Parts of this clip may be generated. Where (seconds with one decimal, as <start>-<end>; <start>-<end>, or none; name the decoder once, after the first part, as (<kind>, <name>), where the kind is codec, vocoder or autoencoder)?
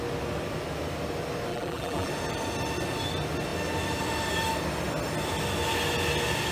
1.5-2.1 (vocoder, BigVGAN v2)